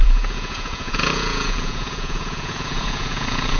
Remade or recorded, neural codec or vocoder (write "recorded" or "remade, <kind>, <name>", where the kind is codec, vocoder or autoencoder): remade, vocoder, Vocos